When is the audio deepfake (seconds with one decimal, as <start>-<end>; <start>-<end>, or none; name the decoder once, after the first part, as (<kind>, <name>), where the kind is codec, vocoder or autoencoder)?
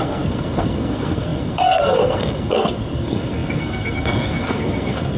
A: 0.0-5.2 (codec, SNAC)